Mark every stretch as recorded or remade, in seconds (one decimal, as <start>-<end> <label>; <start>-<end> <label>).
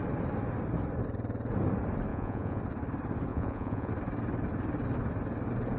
0.0-2.1 recorded; 2.1-2.6 remade; 2.6-3.3 recorded; 3.3-3.9 remade; 3.9-5.8 recorded